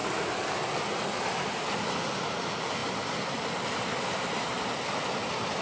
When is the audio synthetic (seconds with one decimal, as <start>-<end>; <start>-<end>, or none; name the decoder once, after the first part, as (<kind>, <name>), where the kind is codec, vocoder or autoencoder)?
none